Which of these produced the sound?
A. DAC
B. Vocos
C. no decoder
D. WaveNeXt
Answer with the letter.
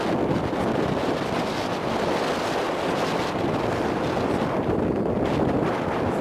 C